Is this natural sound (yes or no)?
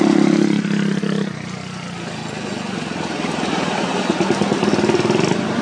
yes